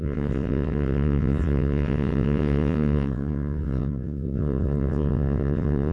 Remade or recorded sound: remade